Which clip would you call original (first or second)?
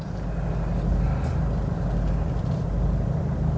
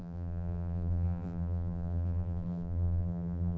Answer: first